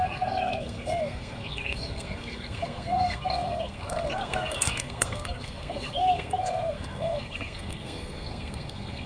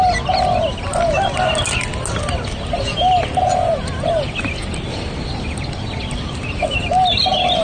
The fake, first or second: first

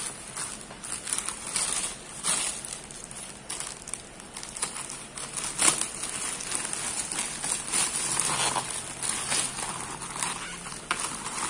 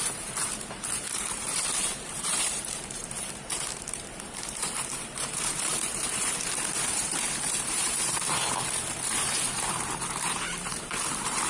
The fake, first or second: second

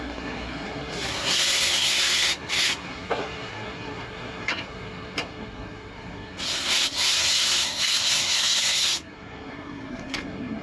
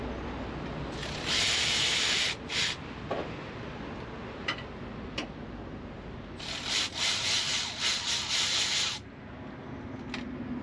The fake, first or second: first